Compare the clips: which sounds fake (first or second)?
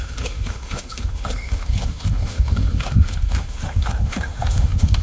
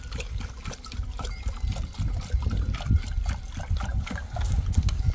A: first